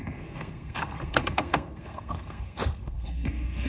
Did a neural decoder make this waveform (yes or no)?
yes